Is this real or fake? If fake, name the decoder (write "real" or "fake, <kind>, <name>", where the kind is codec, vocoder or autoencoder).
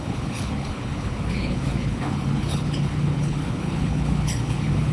fake, codec, HILCodec